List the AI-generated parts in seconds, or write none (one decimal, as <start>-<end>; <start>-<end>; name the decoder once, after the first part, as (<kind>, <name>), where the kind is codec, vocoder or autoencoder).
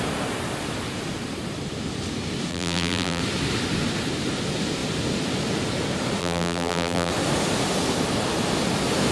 2.5-3.2 (vocoder, BigVGAN v2); 6.2-7.1